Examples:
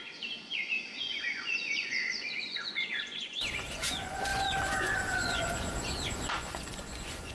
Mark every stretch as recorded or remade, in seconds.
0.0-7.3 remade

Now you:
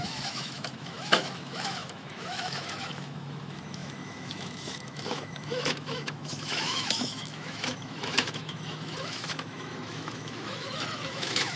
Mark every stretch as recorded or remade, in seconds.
0.0-11.6 remade

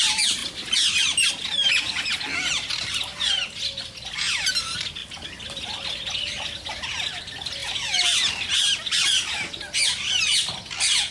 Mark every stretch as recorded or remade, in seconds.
0.0-7.6 recorded; 7.6-8.5 remade; 8.5-11.1 recorded

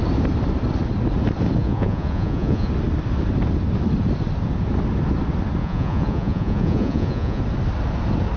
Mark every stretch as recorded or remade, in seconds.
0.0-1.6 recorded; 1.6-2.7 remade; 2.7-5.6 recorded; 5.6-7.4 remade; 7.4-8.4 recorded

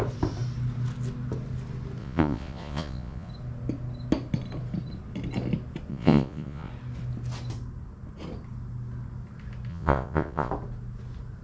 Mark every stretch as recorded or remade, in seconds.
0.0-2.0 recorded; 2.0-3.3 remade; 3.3-5.9 recorded; 5.9-6.7 remade; 6.7-9.7 recorded; 9.7-10.5 remade; 10.5-11.4 recorded

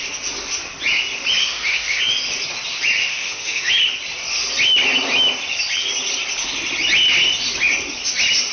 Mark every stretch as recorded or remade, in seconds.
0.0-1.4 recorded; 1.4-2.0 remade; 2.0-3.0 recorded; 3.0-3.7 remade; 3.7-8.5 recorded

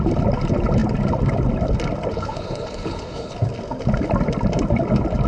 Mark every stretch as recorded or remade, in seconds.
0.0-2.1 recorded; 2.1-3.4 remade; 3.4-5.3 recorded

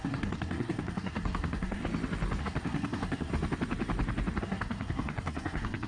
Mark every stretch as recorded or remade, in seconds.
0.0-1.8 remade; 1.8-2.4 recorded; 2.4-3.3 remade; 3.3-4.4 recorded; 4.4-5.9 remade